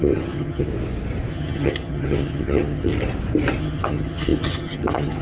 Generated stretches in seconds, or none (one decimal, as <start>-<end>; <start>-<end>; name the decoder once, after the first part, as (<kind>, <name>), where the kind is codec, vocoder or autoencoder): 0.0-0.7 (vocoder, HiFi-GAN); 1.3-2.9; 3.6-5.2